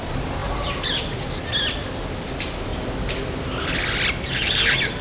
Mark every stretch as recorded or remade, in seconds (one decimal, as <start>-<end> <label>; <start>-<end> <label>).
0.0-5.0 recorded